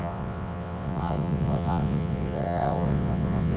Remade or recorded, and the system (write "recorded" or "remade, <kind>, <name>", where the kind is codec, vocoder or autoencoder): remade, vocoder, WaveNeXt